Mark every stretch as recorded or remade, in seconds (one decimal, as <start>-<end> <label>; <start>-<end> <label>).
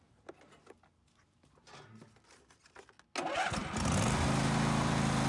0.0-5.3 recorded